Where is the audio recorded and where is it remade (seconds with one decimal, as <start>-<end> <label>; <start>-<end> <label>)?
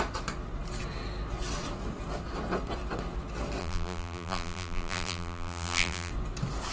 0.0-3.6 recorded; 3.6-6.1 remade; 6.1-6.7 recorded